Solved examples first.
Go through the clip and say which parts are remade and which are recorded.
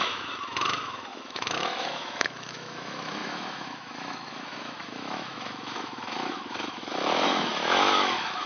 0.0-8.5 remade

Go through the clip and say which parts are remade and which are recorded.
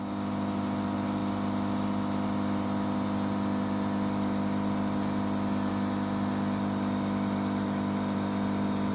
0.0-8.9 recorded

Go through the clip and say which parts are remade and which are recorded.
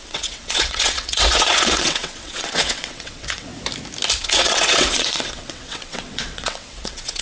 0.0-3.5 remade; 3.5-4.2 recorded; 4.2-7.2 remade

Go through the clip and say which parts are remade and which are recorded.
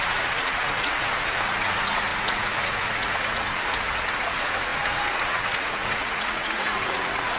0.0-7.4 remade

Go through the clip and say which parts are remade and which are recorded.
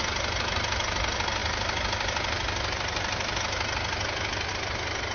0.0-5.1 recorded